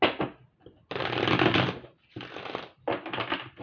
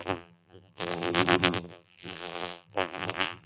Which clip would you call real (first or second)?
first